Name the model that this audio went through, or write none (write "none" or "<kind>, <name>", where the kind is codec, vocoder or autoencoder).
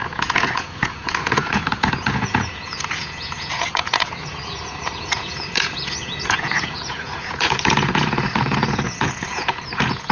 vocoder, Vocos